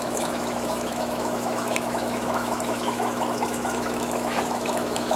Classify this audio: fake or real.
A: fake